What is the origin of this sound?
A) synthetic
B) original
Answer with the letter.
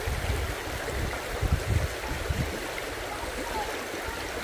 B